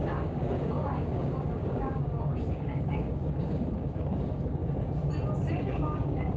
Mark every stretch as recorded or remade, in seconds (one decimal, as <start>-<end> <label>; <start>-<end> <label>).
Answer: 0.0-4.6 remade; 4.6-5.5 recorded; 5.5-6.4 remade